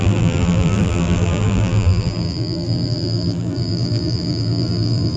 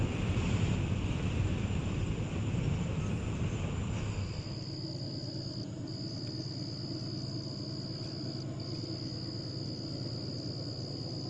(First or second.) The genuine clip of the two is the second